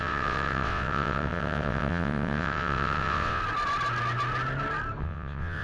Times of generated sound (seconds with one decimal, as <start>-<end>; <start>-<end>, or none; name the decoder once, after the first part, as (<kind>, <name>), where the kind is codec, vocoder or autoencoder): 0.0-3.4 (vocoder, WaveNeXt); 5.0-5.6